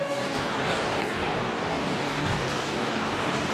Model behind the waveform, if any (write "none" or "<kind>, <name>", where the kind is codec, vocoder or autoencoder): codec, DAC